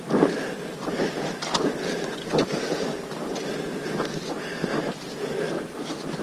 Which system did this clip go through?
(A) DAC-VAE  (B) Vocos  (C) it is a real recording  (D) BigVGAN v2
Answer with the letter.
C